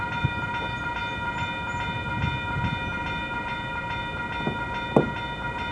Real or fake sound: real